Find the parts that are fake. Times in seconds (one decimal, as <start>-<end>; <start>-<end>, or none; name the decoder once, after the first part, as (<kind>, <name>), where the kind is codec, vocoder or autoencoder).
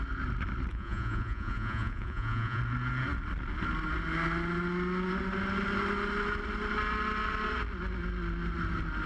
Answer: 0.7-2.6 (vocoder, Vocos)